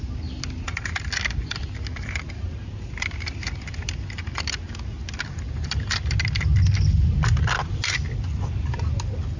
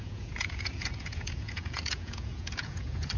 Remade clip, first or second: second